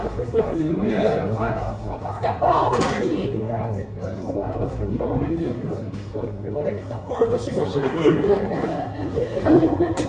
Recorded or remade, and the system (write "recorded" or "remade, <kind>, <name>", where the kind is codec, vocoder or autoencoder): remade, codec, SNAC